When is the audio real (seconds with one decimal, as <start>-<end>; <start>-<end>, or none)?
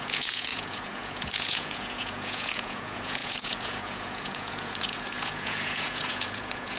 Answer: none